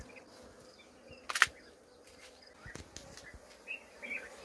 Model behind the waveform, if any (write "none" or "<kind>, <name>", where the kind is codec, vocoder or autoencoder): none